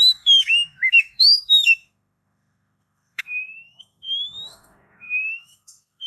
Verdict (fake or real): fake